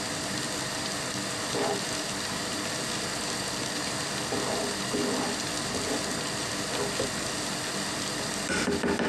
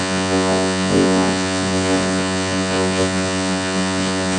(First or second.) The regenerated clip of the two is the second